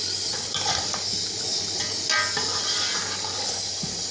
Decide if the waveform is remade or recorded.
recorded